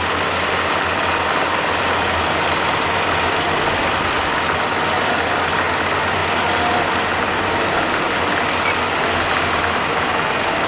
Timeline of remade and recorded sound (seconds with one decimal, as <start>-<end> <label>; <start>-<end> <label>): 0.0-10.7 recorded